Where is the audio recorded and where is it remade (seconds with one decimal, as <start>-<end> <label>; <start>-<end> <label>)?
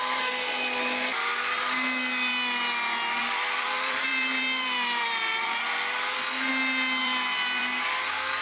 0.0-3.2 recorded; 3.2-6.5 remade; 6.5-7.0 recorded; 7.0-7.6 remade; 7.6-8.4 recorded